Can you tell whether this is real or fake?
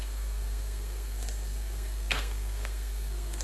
fake